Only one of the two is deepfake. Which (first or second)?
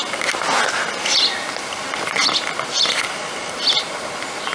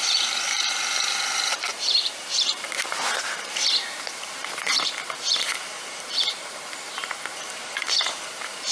second